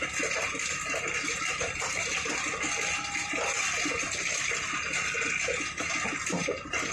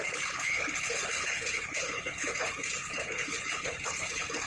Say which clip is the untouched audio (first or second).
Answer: first